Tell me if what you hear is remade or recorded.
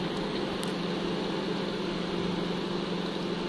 recorded